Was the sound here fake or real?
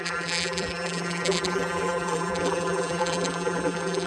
fake